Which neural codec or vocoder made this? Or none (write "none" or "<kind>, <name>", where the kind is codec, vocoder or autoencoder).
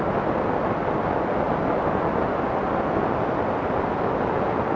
none